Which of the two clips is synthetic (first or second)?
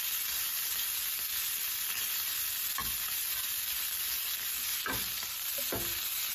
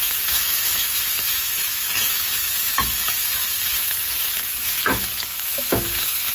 second